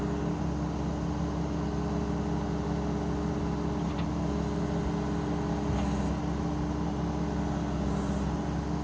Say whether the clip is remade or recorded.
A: recorded